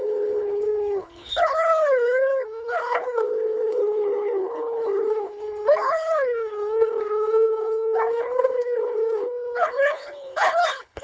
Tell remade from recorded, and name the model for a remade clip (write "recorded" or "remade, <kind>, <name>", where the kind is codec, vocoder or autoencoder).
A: remade, codec, HILCodec